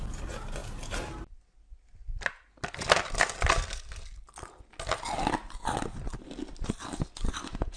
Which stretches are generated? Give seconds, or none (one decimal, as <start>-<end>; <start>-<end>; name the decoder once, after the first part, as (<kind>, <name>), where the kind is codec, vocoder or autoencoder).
none